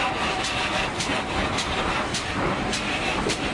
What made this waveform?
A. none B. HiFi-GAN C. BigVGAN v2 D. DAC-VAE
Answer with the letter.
A